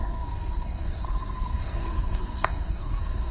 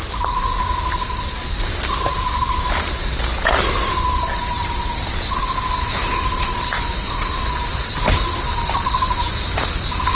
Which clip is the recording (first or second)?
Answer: second